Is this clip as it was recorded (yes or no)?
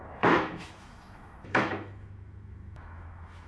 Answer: no